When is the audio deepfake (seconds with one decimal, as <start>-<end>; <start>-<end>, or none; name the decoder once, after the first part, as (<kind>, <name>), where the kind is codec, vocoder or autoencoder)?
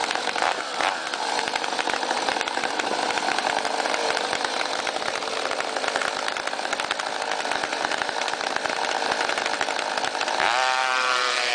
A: 0.0-5.1 (vocoder, BigVGAN v2); 7.7-8.8; 10.8-11.5